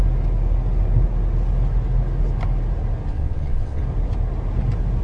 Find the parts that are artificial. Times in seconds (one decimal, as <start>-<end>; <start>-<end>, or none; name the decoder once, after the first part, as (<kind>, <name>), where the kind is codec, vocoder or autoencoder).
3.1-3.8 (vocoder, WaveNeXt)